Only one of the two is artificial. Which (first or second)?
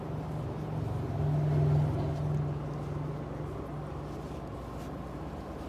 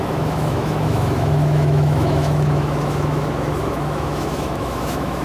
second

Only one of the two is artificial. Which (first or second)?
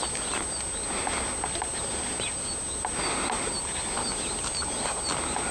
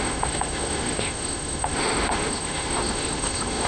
second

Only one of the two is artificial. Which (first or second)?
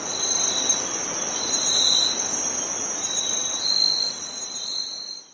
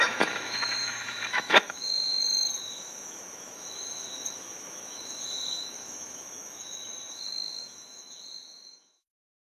second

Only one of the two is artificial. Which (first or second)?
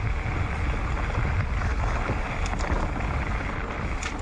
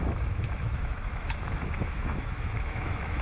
second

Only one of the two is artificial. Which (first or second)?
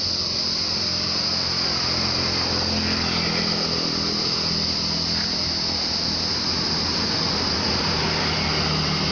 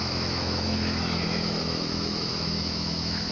second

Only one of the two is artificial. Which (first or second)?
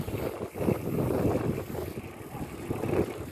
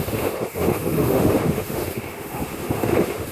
second